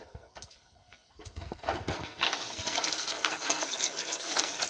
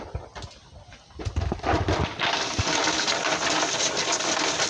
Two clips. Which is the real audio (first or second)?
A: second